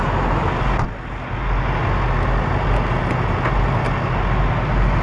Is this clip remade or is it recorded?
recorded